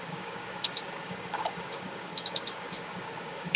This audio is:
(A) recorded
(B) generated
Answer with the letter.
B